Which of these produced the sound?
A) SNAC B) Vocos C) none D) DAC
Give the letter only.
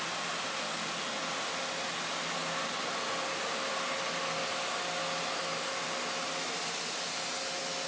C